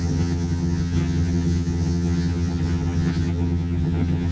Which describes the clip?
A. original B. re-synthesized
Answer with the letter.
B